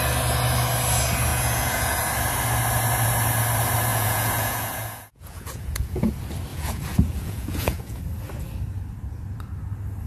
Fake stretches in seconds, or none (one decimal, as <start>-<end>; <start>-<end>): 1.3-2.0; 3.9-6.1; 6.5-8.0